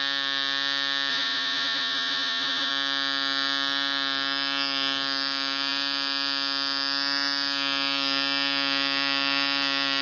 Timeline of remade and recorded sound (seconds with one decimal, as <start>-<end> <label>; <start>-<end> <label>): 0.0-1.1 recorded; 1.1-2.7 remade; 2.7-10.0 recorded